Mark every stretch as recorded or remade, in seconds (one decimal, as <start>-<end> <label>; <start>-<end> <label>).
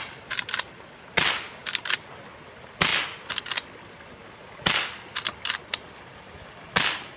0.0-7.2 recorded